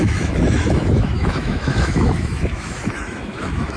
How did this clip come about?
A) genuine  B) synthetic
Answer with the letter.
B